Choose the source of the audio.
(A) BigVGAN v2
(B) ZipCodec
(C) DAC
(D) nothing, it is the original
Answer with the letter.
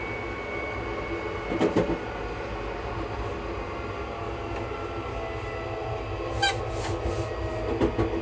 D